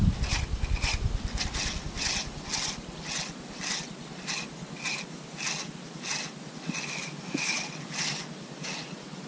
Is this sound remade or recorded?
recorded